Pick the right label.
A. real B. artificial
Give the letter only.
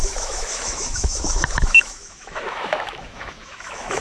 B